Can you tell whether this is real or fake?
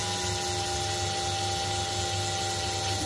real